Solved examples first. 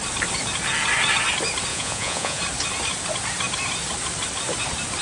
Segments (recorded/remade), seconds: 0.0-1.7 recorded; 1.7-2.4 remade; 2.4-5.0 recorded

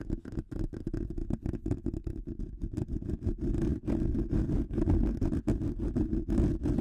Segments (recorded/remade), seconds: 0.0-6.8 recorded

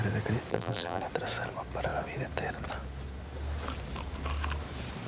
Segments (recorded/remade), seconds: 0.0-0.5 recorded; 0.5-1.0 remade; 1.0-5.1 recorded

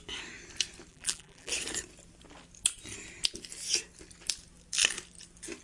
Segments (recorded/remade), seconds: 0.0-0.9 recorded; 0.9-1.5 remade; 1.5-5.6 recorded

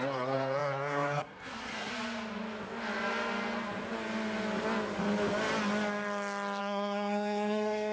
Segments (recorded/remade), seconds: 0.0-1.9 remade; 1.9-6.6 recorded; 6.6-7.9 remade